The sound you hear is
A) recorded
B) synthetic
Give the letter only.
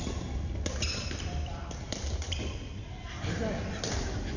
A